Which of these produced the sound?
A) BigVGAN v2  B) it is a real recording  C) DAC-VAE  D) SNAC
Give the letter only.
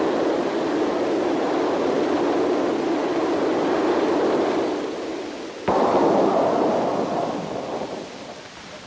B